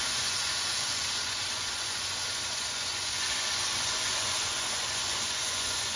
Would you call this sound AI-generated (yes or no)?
yes